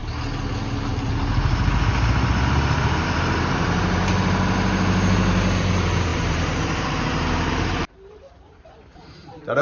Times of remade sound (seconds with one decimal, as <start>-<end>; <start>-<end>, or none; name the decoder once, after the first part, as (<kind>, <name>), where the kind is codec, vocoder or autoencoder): 2.3-9.6 (vocoder, BigVGAN v2)